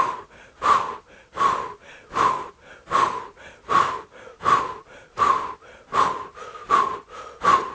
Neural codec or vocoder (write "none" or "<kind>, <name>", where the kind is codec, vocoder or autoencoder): none